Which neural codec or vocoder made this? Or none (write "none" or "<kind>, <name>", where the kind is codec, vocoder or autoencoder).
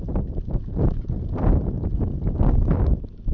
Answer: none